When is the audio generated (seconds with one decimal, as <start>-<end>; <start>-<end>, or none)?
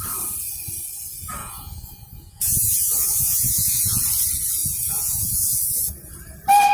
1.4-4.0; 4.6-6.1